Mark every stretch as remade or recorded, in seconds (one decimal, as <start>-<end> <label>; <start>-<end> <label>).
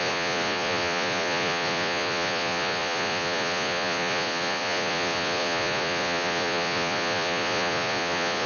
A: 0.0-8.5 remade